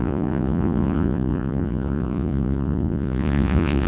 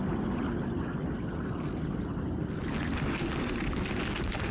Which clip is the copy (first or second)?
first